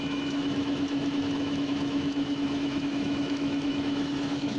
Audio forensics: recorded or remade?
remade